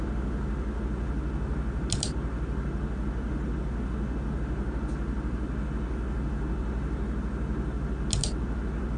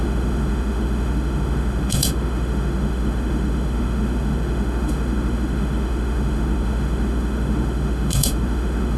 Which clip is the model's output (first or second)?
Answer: second